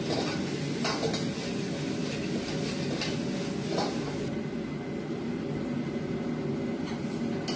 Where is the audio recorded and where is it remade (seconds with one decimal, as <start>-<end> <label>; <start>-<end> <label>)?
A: 0.0-7.6 recorded